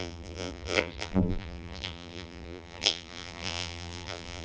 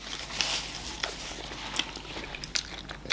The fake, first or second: first